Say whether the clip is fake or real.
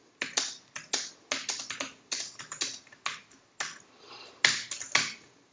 real